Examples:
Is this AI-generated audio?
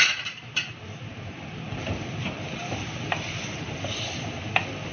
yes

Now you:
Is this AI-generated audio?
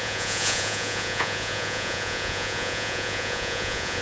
yes